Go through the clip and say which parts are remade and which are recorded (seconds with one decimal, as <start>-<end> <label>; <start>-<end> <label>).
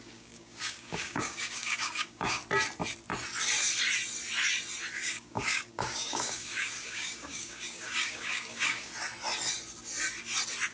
0.0-2.4 remade; 2.4-4.9 recorded; 4.9-8.9 remade; 8.9-10.7 recorded